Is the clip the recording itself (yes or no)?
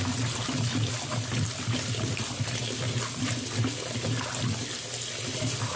yes